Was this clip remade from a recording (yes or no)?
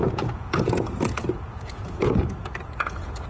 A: yes